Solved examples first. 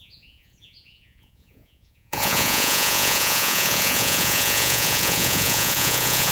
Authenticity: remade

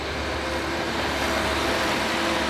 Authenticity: recorded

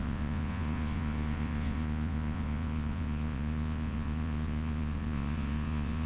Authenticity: remade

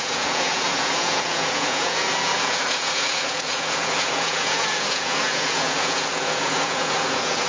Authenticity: remade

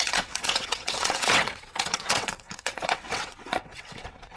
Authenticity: remade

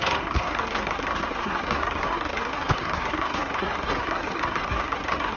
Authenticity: remade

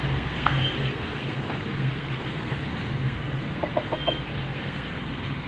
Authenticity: remade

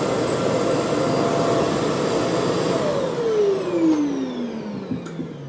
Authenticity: recorded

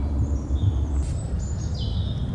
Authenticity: recorded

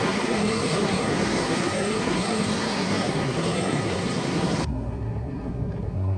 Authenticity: remade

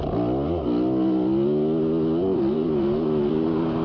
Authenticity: recorded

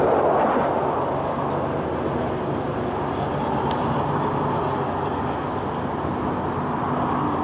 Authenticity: recorded